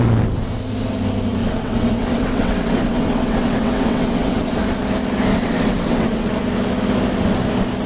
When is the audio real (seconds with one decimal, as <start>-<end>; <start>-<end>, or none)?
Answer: 0.0-1.4; 4.6-5.3; 6.3-7.9